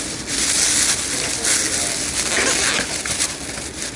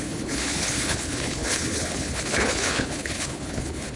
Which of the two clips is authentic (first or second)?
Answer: first